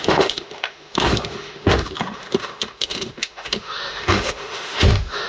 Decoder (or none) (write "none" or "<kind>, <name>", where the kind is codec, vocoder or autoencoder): autoencoder, DAC-VAE